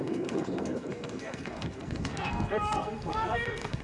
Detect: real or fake fake